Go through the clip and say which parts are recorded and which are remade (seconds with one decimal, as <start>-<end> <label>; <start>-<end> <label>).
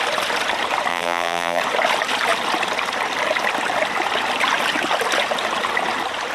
0.0-0.9 recorded; 0.9-1.6 remade; 1.6-6.3 recorded